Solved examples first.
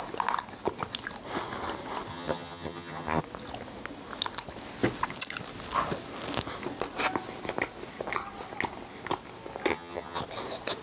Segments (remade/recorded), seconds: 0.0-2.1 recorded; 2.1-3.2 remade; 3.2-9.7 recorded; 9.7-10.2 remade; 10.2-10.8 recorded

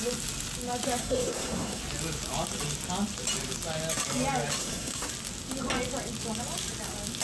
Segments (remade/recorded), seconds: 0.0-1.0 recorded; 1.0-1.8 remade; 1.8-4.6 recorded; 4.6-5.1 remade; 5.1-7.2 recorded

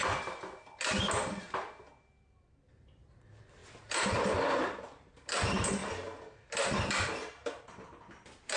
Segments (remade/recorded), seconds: 0.0-8.6 recorded

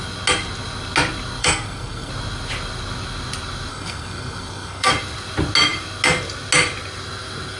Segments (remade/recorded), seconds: 0.0-1.4 recorded; 1.4-2.1 remade; 2.1-3.7 recorded; 3.7-4.9 remade; 4.9-7.6 recorded

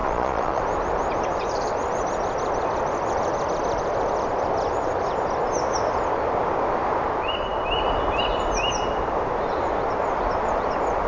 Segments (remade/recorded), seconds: 0.0-0.6 remade; 0.6-11.1 recorded

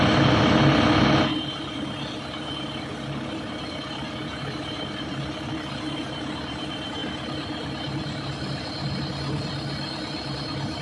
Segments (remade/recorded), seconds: 0.0-10.8 recorded